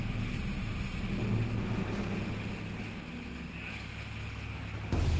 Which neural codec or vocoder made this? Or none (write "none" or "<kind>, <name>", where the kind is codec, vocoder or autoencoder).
none